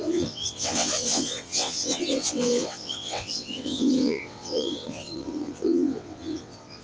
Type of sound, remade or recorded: remade